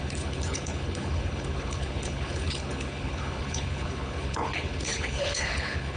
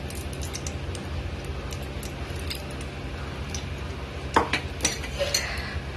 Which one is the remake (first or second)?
first